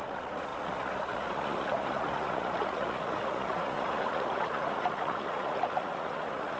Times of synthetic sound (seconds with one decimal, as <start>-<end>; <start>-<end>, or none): 0.0-6.6